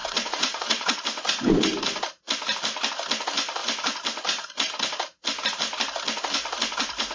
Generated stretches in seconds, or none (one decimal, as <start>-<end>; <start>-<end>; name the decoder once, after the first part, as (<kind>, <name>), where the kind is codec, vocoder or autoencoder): 0.0-1.0 (vocoder, WaveNeXt)